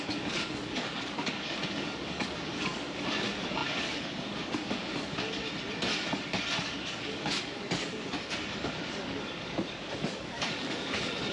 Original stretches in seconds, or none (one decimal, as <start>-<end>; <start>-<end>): 5.4-6.6

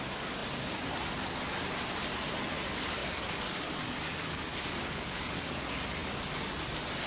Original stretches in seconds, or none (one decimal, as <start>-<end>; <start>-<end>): 0.0-3.0; 5.5-7.1